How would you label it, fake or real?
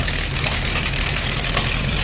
fake